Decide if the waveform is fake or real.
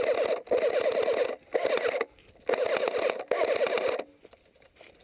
real